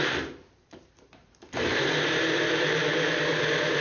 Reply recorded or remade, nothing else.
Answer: remade